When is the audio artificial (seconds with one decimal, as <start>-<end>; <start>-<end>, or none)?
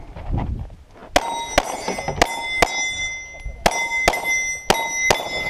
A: none